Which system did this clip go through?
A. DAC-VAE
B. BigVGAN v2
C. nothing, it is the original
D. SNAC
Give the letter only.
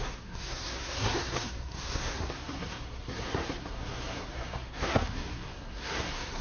D